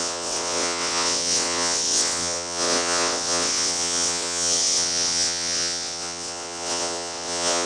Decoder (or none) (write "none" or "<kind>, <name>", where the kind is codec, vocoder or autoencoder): vocoder, WaveNeXt